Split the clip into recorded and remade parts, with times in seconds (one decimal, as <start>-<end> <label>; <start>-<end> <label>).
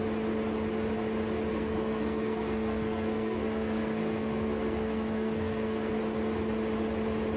0.0-1.5 recorded; 1.5-5.9 remade; 5.9-7.4 recorded